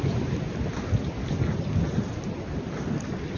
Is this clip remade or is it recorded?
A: recorded